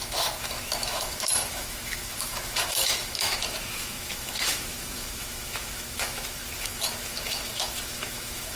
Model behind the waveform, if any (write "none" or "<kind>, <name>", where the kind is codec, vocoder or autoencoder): autoencoder, DAC-VAE